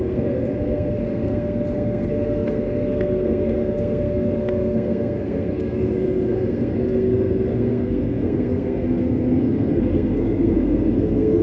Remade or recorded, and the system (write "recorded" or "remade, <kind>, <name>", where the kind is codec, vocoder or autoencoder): remade, codec, SNAC